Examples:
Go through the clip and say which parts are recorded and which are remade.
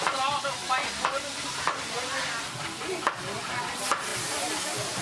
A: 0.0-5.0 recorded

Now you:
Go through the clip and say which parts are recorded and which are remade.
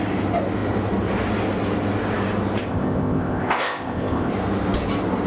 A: 0.0-2.6 recorded; 2.6-4.3 remade; 4.3-5.3 recorded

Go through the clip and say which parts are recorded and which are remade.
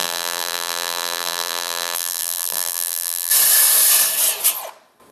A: 0.0-3.3 remade; 3.3-5.1 recorded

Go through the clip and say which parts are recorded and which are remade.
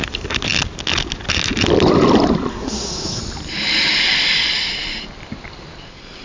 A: 0.0-2.5 recorded; 2.5-3.2 remade; 3.2-6.2 recorded